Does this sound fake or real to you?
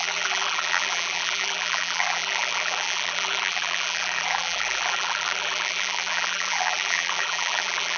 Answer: fake